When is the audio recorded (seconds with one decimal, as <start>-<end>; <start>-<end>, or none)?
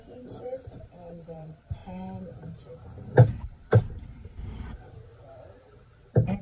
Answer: 5.1-6.4